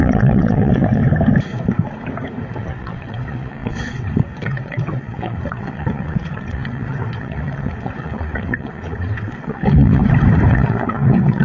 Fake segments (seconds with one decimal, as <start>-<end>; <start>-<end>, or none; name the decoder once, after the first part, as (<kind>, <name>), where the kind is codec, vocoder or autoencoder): 0.0-1.0 (vocoder, WaveNeXt); 2.5-10.0; 10.5-11.4